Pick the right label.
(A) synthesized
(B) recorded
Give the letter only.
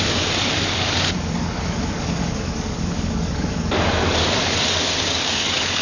A